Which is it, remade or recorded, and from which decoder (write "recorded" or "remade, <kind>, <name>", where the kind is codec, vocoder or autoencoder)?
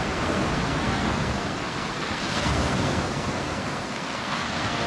remade, codec, SNAC